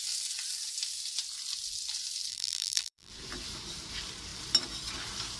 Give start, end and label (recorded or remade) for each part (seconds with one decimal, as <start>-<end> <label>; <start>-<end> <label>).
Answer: 0.0-2.3 recorded; 2.3-3.1 remade; 3.1-5.4 recorded